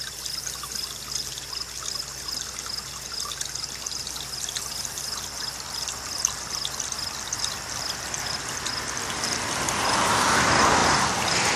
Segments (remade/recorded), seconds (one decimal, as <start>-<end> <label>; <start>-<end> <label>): 0.0-11.6 recorded